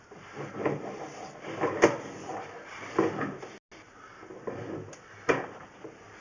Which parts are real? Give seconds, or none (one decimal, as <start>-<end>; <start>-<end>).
0.0-6.2